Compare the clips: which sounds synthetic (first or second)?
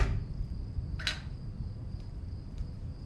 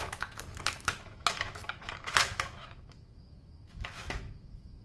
second